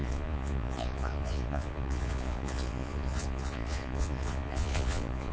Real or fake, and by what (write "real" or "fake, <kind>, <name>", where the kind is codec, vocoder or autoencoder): fake, vocoder, Vocos